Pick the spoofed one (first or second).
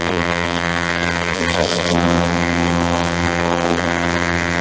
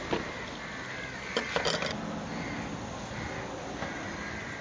first